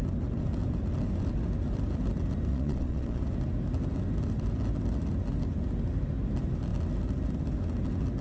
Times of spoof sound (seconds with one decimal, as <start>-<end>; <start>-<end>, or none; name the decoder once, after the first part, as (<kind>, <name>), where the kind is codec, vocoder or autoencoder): 2.5-3.2 (vocoder, Vocos)